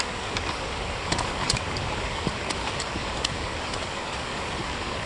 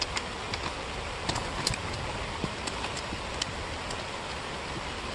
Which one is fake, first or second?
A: first